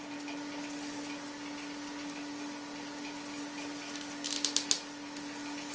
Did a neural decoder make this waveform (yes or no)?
no